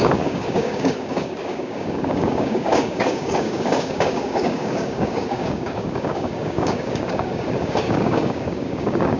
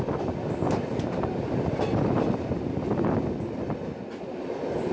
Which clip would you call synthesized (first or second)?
first